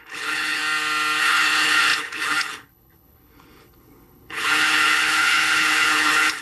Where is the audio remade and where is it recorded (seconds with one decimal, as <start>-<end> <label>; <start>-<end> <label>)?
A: 0.0-0.6 remade; 0.6-1.2 recorded; 1.2-6.4 remade